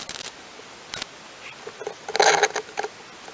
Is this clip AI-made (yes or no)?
no